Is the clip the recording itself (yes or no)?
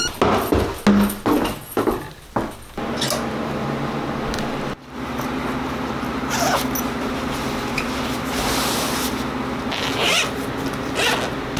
yes